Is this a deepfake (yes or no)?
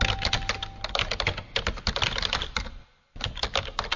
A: no